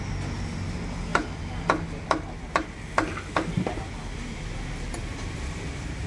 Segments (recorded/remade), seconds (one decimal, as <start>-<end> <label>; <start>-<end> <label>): 0.0-6.1 recorded